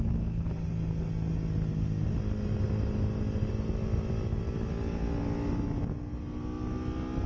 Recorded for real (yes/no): yes